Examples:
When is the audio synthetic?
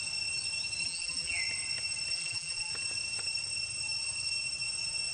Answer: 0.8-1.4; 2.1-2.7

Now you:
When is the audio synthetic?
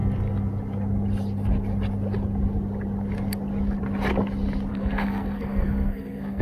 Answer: 4.7-6.4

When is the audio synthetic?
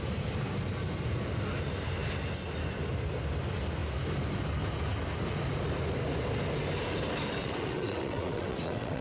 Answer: 7.4-9.0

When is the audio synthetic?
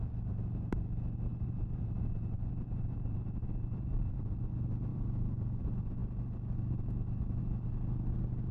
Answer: 1.3-4.5; 4.9-5.6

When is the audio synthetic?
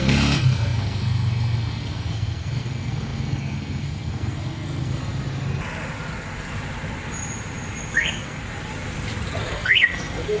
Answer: 0.0-5.0; 7.9-8.4; 9.4-10.4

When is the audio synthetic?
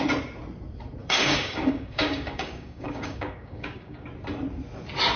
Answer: 1.0-4.1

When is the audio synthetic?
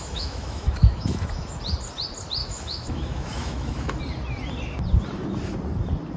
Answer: 0.0-1.6; 2.4-4.0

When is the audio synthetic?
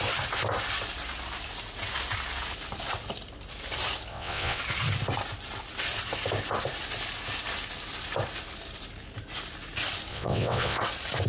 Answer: 4.1-4.6; 10.1-10.8